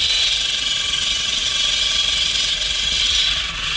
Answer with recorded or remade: remade